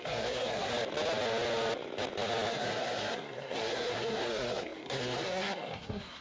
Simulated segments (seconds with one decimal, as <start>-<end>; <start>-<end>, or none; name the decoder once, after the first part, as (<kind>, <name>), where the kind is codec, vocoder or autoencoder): 0.0-0.7 (codec, SNAC); 2.5-6.2